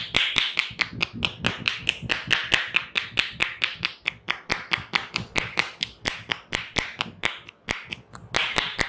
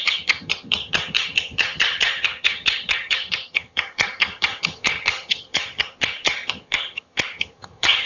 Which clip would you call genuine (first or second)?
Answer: first